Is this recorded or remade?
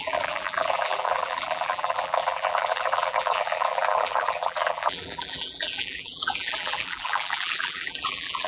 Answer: remade